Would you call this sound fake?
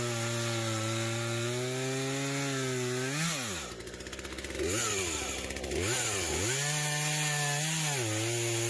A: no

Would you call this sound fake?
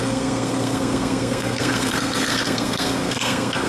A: yes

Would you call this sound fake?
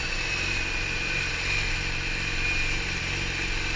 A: no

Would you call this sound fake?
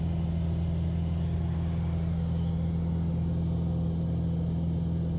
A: no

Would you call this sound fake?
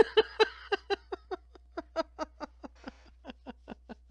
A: no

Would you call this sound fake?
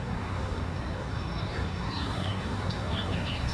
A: yes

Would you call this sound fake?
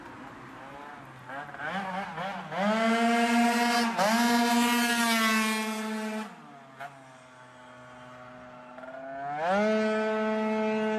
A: no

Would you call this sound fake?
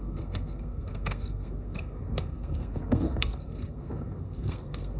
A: yes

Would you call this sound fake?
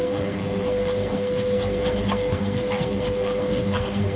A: yes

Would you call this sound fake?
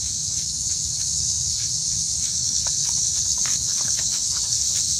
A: yes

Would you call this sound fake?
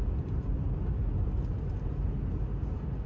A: no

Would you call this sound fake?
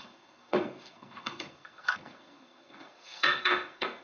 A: yes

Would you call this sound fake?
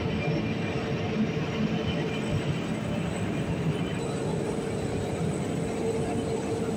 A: no